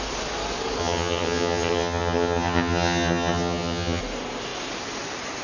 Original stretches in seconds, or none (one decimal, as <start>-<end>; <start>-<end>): 0.0-0.8; 4.0-5.4